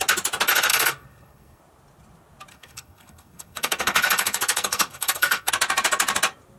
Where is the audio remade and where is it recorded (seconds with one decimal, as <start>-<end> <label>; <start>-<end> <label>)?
0.0-0.7 recorded; 0.7-1.6 remade; 1.6-2.5 recorded; 2.5-5.5 remade; 5.5-6.6 recorded